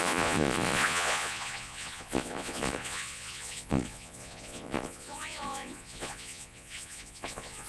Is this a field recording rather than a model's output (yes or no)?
no